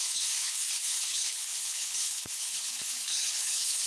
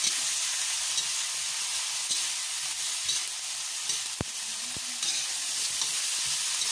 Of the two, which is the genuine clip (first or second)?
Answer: second